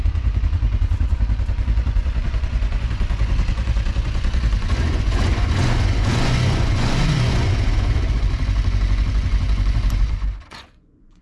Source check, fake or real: fake